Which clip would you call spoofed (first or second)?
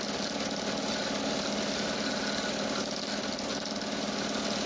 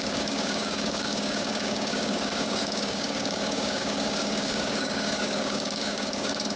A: second